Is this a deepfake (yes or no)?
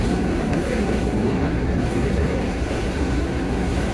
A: yes